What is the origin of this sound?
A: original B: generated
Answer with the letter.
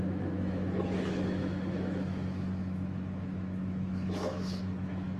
B